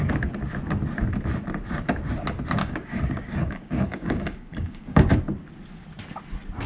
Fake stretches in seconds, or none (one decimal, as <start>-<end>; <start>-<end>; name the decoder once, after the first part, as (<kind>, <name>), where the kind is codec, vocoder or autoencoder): 2.6-5.2 (codec, DAC)